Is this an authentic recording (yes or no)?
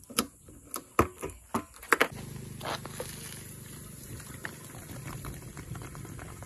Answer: yes